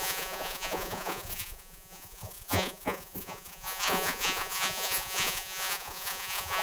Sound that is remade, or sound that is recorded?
remade